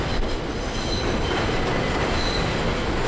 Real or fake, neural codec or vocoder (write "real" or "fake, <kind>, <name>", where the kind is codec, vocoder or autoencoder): real